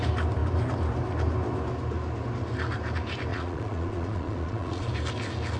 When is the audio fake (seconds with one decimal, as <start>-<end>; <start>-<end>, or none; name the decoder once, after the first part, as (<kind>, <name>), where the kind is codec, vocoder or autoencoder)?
3.3-4.9 (vocoder, Vocos)